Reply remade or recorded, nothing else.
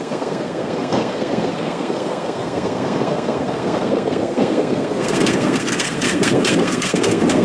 remade